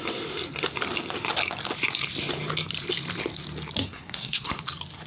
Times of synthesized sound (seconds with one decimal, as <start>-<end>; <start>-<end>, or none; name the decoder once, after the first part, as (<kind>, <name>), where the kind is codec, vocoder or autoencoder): 3.8-4.5 (codec, SNAC)